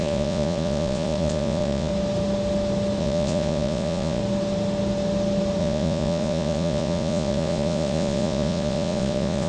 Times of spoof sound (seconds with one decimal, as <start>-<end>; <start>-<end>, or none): 0.0-1.9; 3.0-4.2; 5.6-9.5